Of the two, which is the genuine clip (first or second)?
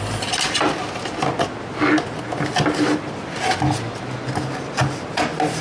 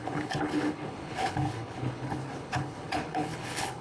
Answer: first